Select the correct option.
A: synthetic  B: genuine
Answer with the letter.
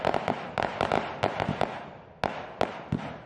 B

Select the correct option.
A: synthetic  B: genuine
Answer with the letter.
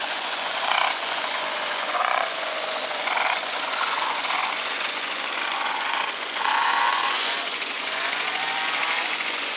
A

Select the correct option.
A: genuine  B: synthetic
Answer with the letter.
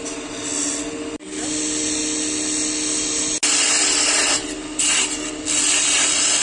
A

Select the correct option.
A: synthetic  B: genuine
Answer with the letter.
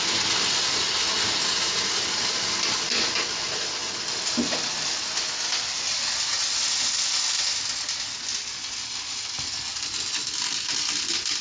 B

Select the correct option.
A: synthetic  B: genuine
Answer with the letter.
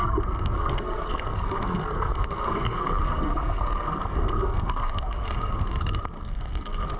A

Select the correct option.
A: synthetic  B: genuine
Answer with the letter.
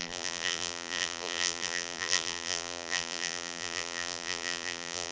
A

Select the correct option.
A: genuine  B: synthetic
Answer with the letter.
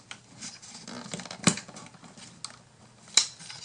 A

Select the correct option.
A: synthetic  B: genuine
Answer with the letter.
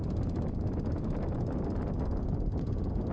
B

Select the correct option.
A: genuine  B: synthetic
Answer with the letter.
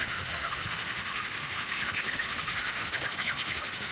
B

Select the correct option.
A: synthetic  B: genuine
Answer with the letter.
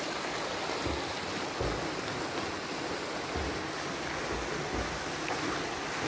B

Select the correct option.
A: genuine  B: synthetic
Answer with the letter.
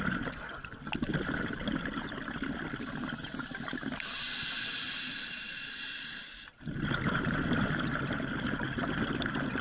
A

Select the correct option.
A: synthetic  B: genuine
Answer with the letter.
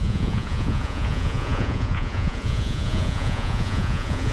A